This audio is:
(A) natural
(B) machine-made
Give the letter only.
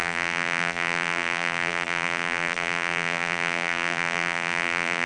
B